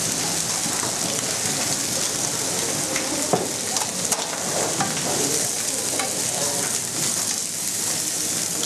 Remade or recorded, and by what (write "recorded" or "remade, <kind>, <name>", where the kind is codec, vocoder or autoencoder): recorded